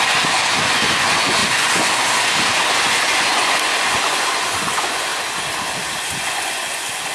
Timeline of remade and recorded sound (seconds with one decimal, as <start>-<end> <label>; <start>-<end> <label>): 0.0-5.1 remade; 5.1-6.1 recorded; 6.1-7.1 remade